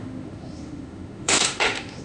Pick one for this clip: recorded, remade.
remade